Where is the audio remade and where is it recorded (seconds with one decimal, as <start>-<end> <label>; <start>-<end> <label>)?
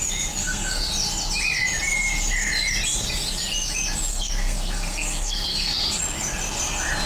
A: 0.0-0.4 recorded; 0.4-0.9 remade; 0.9-4.1 recorded; 4.1-6.0 remade; 6.0-7.1 recorded